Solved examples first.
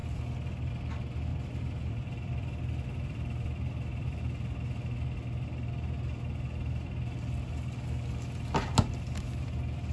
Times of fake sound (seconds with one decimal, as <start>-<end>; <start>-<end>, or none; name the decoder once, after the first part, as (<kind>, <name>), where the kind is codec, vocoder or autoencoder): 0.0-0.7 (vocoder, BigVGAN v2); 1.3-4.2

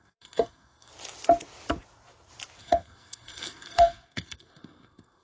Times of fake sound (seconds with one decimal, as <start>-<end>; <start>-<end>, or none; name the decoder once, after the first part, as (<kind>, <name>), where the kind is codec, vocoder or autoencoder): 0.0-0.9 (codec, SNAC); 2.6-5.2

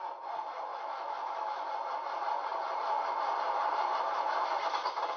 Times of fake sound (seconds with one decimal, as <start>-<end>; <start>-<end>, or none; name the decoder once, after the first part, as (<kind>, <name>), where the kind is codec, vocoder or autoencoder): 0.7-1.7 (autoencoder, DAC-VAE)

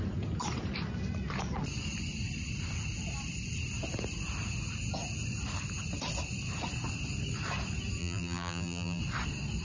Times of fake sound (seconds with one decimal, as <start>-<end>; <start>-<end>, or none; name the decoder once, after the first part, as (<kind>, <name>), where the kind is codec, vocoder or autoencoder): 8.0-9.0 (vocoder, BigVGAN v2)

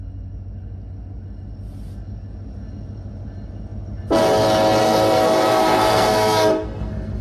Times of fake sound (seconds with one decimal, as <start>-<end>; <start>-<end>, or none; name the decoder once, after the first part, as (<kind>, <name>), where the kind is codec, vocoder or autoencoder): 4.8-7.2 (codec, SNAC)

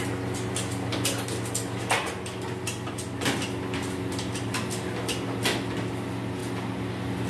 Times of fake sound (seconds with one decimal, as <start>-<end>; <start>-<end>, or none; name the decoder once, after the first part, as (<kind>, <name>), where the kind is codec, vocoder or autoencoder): none